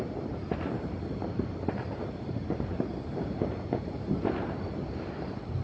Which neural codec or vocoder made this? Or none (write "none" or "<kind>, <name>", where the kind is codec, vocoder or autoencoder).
vocoder, BigVGAN v2